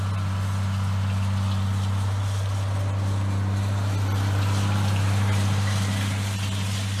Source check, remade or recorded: recorded